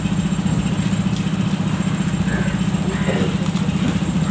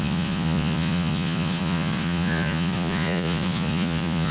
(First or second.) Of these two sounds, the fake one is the second